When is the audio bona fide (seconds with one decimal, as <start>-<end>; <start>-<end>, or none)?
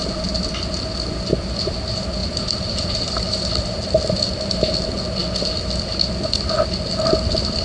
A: 0.0-2.2; 3.5-7.6